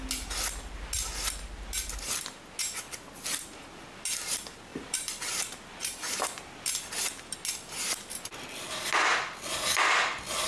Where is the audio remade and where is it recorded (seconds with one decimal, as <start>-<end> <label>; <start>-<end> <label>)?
0.0-4.7 recorded; 4.7-5.2 remade; 5.2-5.8 recorded; 5.8-6.4 remade; 6.4-10.5 recorded